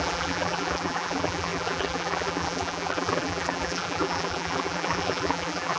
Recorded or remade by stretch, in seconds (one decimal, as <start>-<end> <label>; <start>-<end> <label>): 0.0-5.8 remade